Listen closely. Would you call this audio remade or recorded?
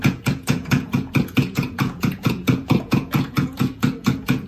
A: remade